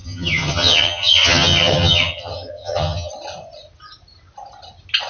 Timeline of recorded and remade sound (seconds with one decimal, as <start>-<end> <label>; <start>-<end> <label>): 0.0-3.1 remade; 3.1-5.1 recorded